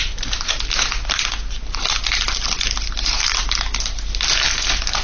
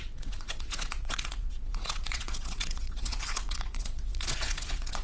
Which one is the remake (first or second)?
second